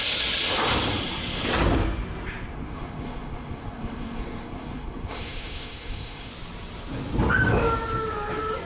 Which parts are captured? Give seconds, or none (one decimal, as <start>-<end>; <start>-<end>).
0.0-2.5; 6.3-8.7